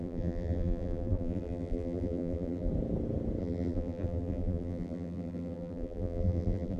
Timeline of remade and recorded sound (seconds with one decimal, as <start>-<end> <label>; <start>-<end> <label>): 0.0-2.7 remade; 2.7-3.4 recorded; 3.4-6.8 remade